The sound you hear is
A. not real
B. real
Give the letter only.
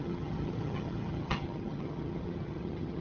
A